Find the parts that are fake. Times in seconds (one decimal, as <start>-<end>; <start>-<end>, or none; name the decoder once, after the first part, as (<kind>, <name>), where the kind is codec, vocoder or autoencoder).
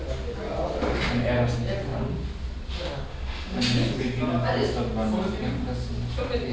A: 3.1-3.6 (autoencoder, DAC-VAE)